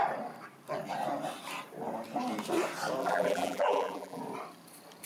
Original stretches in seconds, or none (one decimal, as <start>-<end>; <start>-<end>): 0.0-3.0; 4.2-5.1